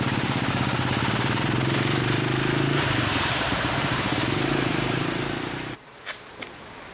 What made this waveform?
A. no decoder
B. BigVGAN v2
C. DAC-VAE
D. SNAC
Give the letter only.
B